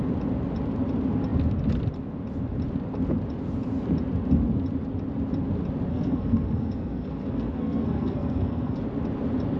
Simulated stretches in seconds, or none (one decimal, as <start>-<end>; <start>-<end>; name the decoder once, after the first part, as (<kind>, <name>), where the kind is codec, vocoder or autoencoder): 5.9-8.8 (codec, SNAC)